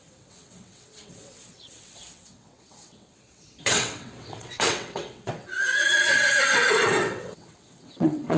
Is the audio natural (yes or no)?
no